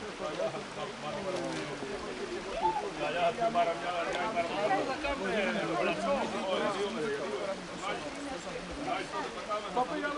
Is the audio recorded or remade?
recorded